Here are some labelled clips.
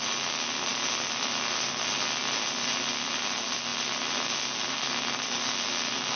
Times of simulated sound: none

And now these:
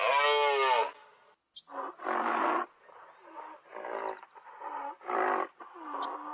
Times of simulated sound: none

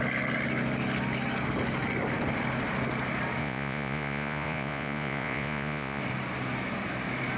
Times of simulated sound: 3.4-6.0 (vocoder, Vocos)

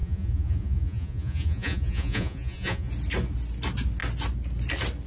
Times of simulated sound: 0.0-2.9 (vocoder, Vocos)

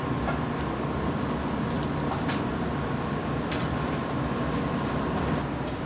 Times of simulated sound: none

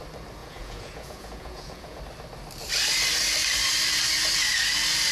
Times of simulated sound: 0.4-2.0 (vocoder, Vocos)